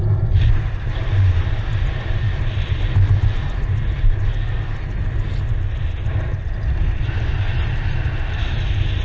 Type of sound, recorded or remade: recorded